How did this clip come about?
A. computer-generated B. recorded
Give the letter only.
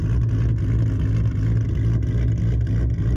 B